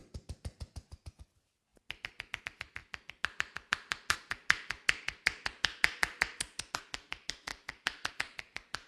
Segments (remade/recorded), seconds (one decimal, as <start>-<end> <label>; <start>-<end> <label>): 0.0-1.1 remade; 1.1-7.5 recorded; 7.5-8.1 remade; 8.1-8.9 recorded